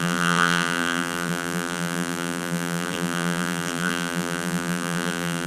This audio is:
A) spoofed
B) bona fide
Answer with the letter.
A